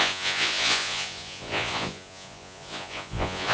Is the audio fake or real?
fake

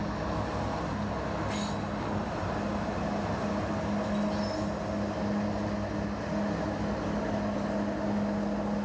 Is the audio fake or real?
real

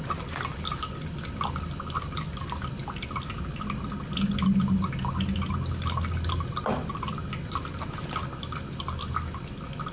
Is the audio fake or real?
real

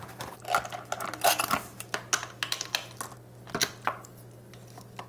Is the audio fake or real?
real